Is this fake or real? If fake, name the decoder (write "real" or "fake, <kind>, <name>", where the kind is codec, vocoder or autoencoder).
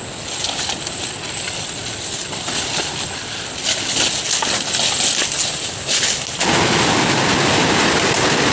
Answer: real